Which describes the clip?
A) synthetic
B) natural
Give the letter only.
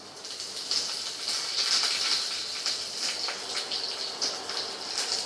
B